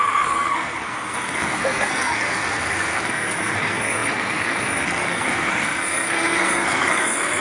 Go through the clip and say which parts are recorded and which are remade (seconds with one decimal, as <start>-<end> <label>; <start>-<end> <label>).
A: 0.0-7.4 remade